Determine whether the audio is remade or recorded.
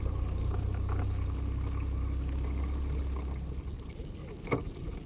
recorded